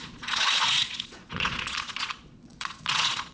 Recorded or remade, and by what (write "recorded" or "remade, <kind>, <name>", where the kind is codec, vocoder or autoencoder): remade, vocoder, Vocos